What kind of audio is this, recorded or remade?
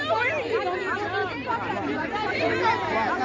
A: recorded